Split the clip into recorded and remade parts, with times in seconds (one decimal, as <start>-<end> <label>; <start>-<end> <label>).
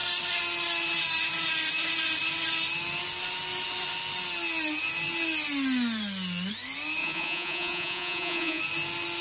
0.0-7.0 recorded; 7.0-8.6 remade; 8.6-9.2 recorded